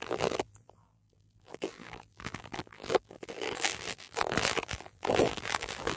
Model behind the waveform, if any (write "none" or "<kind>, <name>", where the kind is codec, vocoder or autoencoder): vocoder, BigVGAN v2